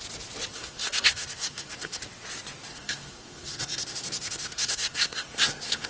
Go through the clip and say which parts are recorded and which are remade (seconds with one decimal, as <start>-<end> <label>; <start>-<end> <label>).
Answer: 0.0-0.5 recorded; 0.5-2.0 remade; 2.0-2.7 recorded; 2.7-5.9 remade